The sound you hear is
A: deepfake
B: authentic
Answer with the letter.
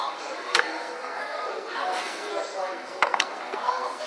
A